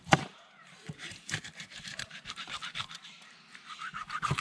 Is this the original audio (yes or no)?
no